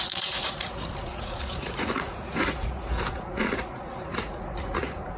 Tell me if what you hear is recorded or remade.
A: remade